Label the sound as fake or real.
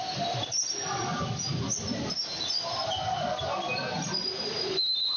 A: real